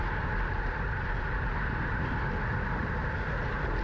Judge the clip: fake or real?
real